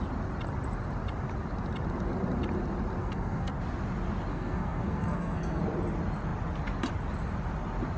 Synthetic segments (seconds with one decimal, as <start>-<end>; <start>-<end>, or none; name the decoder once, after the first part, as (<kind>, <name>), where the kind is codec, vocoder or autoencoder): 3.0-3.5 (codec, SNAC); 4.3-5.6